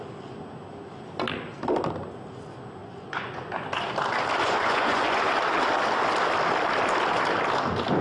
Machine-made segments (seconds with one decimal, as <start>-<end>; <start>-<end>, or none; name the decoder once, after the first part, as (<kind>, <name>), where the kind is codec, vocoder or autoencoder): 2.8-3.5 (vocoder, Vocos); 4.4-5.3